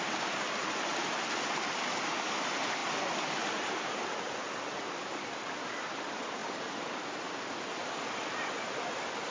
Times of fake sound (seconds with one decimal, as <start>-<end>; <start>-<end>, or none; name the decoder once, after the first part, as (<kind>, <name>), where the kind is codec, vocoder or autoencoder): 6.4-7.3 (vocoder, BigVGAN v2)